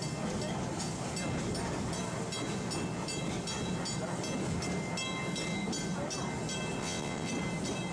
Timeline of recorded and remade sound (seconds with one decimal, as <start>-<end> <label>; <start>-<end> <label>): 0.0-6.8 recorded; 6.8-7.3 remade; 7.3-7.9 recorded

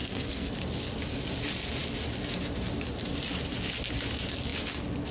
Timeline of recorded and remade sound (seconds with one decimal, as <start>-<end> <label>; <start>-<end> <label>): 0.0-0.5 remade; 0.5-5.1 recorded

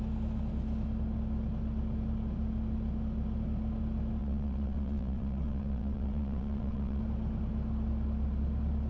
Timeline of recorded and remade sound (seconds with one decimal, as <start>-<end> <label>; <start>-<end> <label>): 0.0-4.2 recorded; 4.2-7.0 remade; 7.0-8.9 recorded

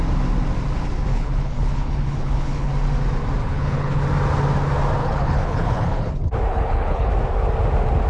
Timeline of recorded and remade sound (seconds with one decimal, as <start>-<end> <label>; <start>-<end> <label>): 0.0-1.1 recorded; 1.1-2.7 remade; 2.7-3.4 recorded; 3.4-4.0 remade; 4.0-5.0 recorded; 5.0-6.1 remade; 6.1-6.5 recorded; 6.5-7.1 remade; 7.1-8.1 recorded

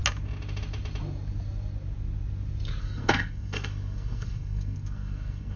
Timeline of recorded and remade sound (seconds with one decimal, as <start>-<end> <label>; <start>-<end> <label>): 0.0-2.8 recorded; 2.8-5.6 remade

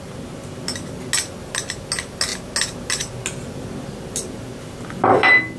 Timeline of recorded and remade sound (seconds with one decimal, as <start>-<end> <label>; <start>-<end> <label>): 0.0-5.6 recorded

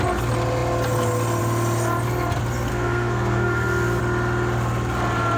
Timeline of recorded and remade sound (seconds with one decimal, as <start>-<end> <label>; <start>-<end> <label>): 0.0-2.7 recorded; 2.7-4.0 remade; 4.0-5.4 recorded